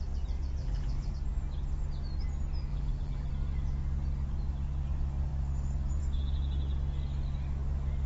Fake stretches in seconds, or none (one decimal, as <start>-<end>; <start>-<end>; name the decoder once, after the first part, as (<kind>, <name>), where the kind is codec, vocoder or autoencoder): 0.6-1.1 (vocoder, BigVGAN v2); 2.7-3.3

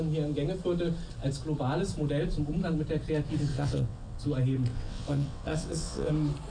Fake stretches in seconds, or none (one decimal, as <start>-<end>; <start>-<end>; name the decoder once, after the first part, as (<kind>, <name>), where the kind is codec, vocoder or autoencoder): 3.5-4.2 (vocoder, WaveNeXt); 4.7-6.1

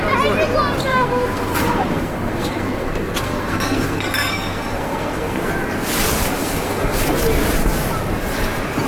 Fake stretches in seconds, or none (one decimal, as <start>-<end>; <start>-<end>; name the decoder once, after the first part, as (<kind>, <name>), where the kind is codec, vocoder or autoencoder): 0.9-5.5 (codec, SNAC); 6.4-7.0

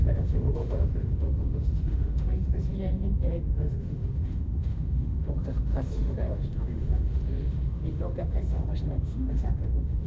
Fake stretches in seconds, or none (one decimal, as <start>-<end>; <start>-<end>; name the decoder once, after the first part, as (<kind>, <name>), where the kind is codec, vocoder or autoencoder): 0.0-10.1 (autoencoder, DAC-VAE)

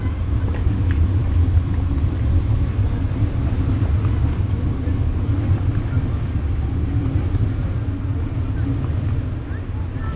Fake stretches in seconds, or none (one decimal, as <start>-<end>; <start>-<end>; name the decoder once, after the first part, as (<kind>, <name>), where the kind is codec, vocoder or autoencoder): 1.2-2.8 (vocoder, BigVGAN v2)

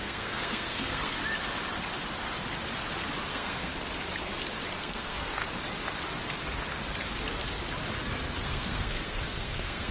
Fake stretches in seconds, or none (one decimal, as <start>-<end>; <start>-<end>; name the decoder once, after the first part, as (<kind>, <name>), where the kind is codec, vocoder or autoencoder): 0.0-1.2 (codec, SNAC); 3.3-3.7; 4.8-5.4; 8.4-9.9

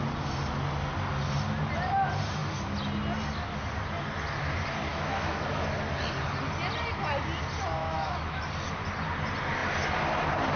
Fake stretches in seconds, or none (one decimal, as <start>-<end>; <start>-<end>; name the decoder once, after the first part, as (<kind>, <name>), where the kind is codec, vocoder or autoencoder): 4.9-5.4 (autoencoder, DAC-VAE); 7.8-8.4